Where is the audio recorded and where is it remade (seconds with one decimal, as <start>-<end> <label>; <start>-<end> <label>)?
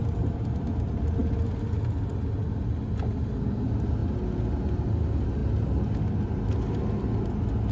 0.0-7.7 recorded